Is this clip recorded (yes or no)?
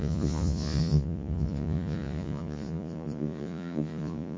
no